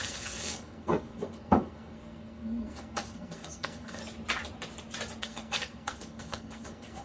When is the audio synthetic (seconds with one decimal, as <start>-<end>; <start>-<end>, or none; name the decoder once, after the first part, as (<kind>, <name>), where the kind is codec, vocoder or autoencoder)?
0.0-4.0 (codec, SNAC); 5.2-7.0